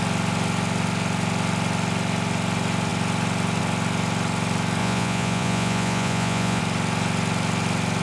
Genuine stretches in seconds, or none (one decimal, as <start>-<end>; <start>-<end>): 0.0-4.8; 6.6-8.0